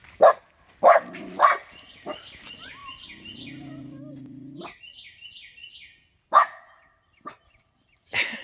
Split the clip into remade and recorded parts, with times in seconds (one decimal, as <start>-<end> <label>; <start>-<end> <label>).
0.0-0.7 remade; 0.7-2.8 recorded; 2.8-6.9 remade; 6.9-8.4 recorded